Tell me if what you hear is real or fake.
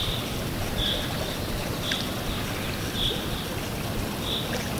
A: real